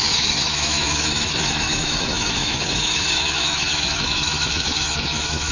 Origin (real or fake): fake